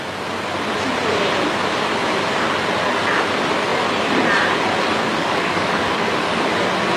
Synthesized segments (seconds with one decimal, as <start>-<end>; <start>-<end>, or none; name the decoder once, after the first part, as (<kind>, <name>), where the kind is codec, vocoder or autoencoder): 5.2-6.5 (codec, DAC)